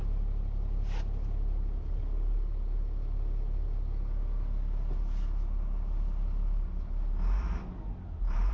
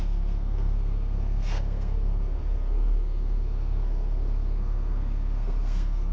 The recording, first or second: first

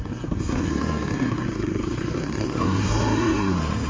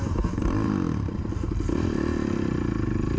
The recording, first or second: second